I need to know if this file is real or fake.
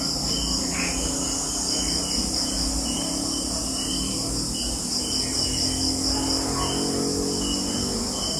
real